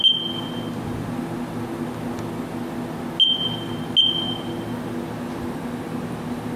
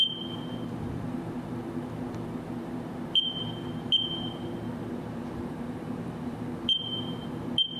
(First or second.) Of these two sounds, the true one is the first